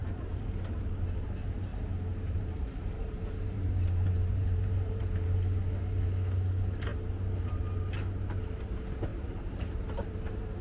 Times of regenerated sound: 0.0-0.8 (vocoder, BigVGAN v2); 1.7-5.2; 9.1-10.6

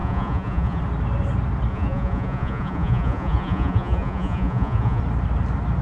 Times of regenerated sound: 0.0-0.8 (vocoder, Vocos); 1.7-5.0

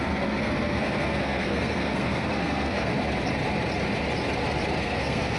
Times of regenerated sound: 0.0-2.9 (codec, SNAC); 4.8-5.4

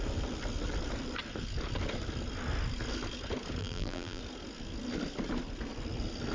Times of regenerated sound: 3.6-4.2 (vocoder, BigVGAN v2)

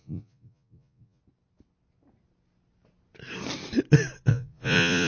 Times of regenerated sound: 0.0-1.2 (vocoder, Vocos); 4.3-5.1

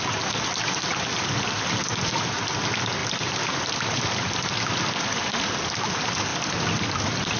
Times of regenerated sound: 3.0-4.5 (vocoder, BigVGAN v2); 6.3-7.0

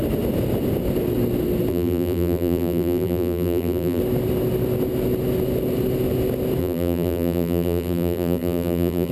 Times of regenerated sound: 1.7-4.0 (vocoder, BigVGAN v2); 6.6-9.1